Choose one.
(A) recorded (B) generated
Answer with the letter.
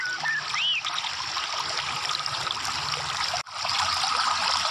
A